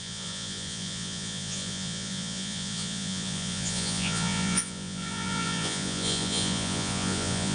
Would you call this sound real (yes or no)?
no